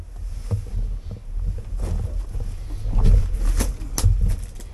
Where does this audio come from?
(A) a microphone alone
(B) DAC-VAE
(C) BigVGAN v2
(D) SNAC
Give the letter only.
A